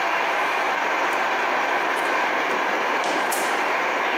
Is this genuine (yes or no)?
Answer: no